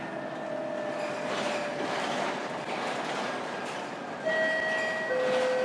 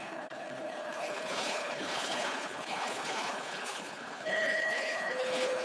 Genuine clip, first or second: first